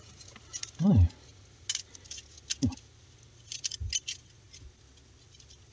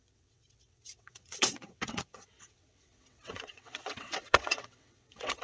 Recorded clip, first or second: first